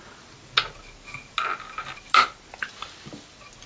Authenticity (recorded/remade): recorded